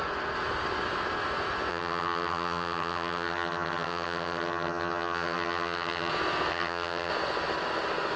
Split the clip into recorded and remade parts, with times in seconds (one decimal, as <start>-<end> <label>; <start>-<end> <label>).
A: 0.0-1.7 recorded; 1.7-6.1 remade; 6.1-6.5 recorded; 6.5-7.1 remade; 7.1-8.2 recorded